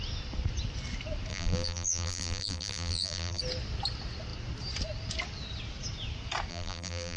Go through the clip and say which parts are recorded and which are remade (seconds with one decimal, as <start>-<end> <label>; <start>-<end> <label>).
0.0-1.3 recorded; 1.3-3.4 remade; 3.4-6.5 recorded; 6.5-7.2 remade